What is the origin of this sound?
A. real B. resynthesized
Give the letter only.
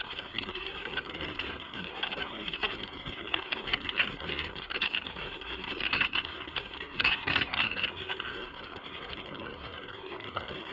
B